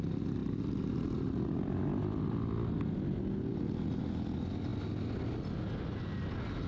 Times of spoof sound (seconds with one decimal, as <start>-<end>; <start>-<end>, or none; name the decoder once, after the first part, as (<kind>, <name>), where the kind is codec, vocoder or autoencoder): none